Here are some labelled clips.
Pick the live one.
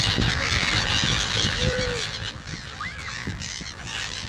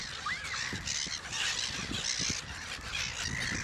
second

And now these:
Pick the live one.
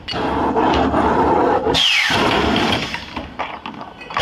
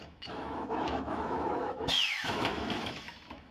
first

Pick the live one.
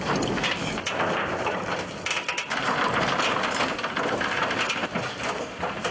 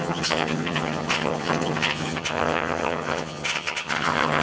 first